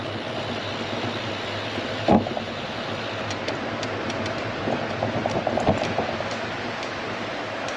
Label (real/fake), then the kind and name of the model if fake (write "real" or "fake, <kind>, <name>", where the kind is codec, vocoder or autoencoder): real